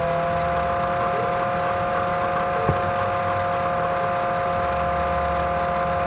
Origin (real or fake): real